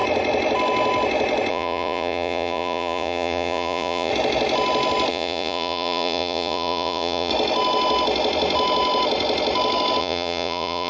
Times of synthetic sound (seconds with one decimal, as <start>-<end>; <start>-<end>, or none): 1.5-4.1; 5.1-7.3; 10.0-10.9